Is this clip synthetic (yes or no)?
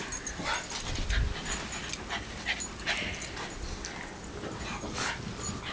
no